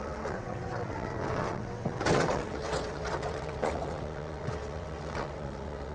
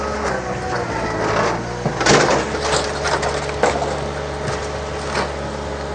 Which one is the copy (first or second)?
first